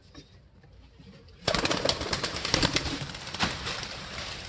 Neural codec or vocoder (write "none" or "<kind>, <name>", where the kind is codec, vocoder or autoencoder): vocoder, BigVGAN v2